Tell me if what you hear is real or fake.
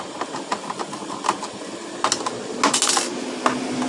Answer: real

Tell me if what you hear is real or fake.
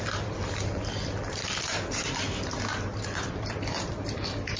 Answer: fake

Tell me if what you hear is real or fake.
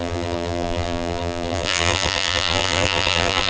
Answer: fake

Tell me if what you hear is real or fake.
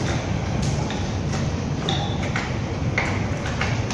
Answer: fake